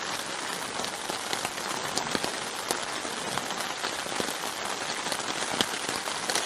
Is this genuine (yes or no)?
yes